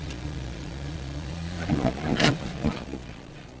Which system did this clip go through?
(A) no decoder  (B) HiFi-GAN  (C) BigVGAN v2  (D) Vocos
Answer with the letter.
D